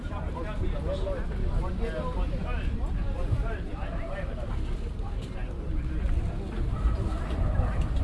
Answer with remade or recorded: recorded